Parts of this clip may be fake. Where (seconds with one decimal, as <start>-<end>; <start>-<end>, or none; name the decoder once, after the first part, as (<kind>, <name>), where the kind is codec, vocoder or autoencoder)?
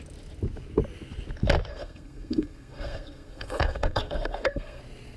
1.7-4.8 (codec, SNAC)